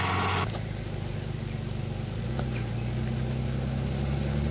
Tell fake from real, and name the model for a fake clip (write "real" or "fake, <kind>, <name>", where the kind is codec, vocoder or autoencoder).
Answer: real